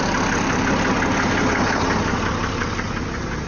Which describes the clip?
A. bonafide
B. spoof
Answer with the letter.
B